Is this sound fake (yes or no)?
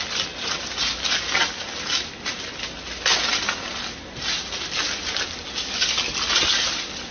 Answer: no